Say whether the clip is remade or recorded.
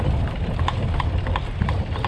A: recorded